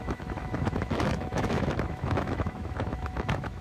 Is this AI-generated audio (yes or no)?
yes